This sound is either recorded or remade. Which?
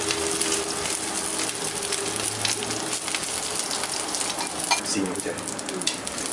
recorded